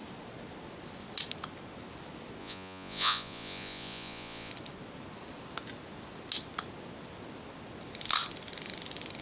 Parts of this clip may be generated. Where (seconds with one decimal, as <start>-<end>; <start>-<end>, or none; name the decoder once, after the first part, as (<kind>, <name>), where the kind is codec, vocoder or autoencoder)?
2.4-4.5 (vocoder, Vocos)

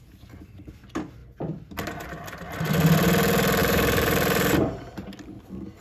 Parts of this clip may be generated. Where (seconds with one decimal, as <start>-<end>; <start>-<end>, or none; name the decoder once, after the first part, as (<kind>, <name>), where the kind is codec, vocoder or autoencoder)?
3.6-5.1 (vocoder, BigVGAN v2)

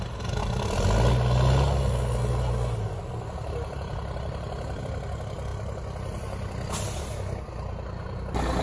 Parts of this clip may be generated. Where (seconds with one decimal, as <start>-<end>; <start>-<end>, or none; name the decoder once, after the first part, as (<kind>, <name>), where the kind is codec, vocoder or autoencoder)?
none